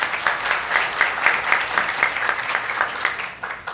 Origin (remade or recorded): recorded